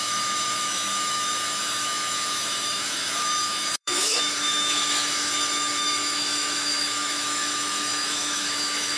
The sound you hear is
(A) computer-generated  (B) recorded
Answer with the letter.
A